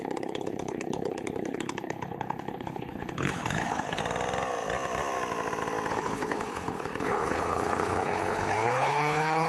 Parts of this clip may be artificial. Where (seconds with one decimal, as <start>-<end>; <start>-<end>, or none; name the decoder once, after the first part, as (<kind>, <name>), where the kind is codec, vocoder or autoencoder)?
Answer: 0.0-4.0 (codec, HILCodec); 5.9-9.5